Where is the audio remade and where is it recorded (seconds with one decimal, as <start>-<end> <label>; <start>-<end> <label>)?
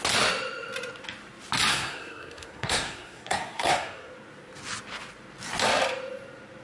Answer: 0.0-1.7 recorded; 1.7-4.1 remade; 4.1-6.6 recorded